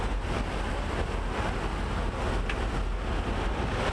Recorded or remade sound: recorded